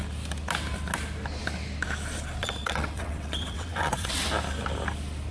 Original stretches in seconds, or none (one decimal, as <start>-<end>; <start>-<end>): 0.0-2.4; 4.3-5.3

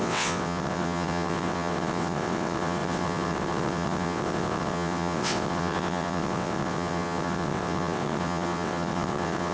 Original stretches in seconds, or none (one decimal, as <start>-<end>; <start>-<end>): none

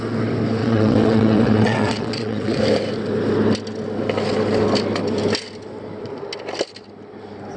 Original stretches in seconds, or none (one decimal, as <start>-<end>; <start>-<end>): 0.0-0.6; 2.6-7.6